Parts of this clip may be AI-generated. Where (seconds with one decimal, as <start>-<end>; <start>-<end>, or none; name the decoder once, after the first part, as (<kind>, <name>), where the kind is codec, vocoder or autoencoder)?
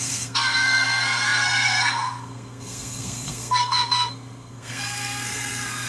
0.0-5.9 (codec, SNAC)